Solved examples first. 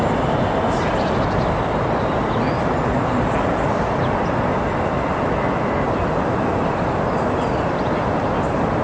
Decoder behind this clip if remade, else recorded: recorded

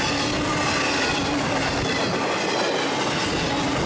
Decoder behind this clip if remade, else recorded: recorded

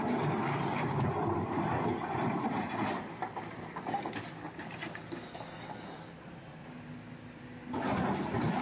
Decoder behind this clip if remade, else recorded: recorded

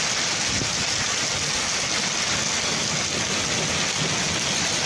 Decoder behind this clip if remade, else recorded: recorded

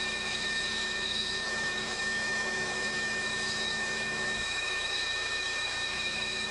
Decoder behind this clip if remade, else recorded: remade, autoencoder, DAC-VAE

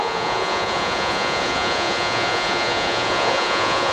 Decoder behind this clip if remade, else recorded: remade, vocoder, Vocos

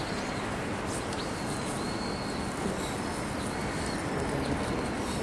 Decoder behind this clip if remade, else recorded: recorded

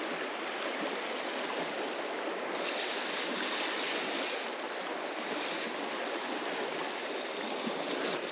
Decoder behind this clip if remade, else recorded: recorded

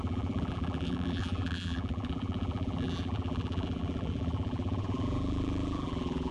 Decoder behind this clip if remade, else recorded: remade, vocoder, BigVGAN v2